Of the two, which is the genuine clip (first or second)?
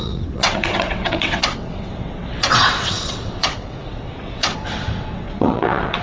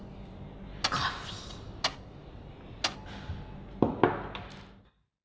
second